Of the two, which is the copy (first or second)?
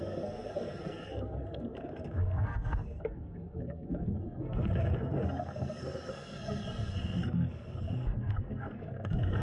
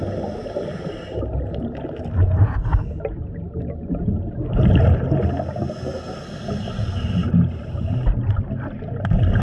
first